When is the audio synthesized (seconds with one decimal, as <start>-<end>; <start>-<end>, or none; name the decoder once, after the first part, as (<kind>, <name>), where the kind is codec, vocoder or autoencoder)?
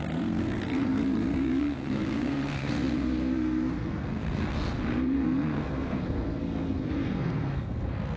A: 0.0-8.2 (codec, SNAC)